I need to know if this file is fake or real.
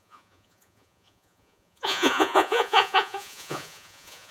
fake